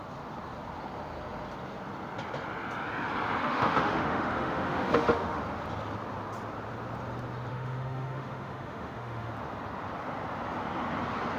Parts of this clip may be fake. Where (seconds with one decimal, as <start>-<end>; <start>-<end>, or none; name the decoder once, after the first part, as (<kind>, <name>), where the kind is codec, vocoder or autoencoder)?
3.4-5.4 (autoencoder, DAC-VAE); 7.5-9.3